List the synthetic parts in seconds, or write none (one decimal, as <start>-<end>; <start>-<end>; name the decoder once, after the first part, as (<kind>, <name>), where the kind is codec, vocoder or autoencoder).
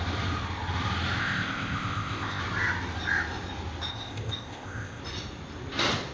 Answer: 1.2-2.4 (codec, ZipCodec); 3.9-5.0